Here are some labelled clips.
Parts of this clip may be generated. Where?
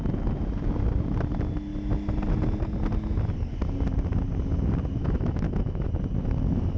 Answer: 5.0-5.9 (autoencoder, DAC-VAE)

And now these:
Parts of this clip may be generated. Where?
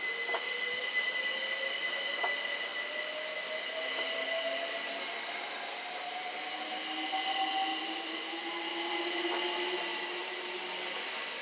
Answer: none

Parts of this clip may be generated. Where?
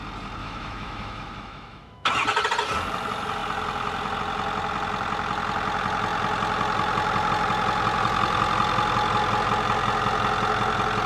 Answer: 0.4-2.1 (autoencoder, DAC-VAE)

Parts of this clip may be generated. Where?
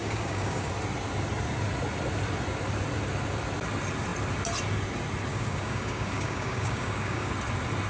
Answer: 0.0-0.7 (codec, DAC); 5.3-7.3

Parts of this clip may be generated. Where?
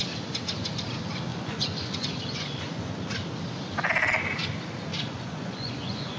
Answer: 1.3-3.0 (vocoder, Vocos); 4.9-6.2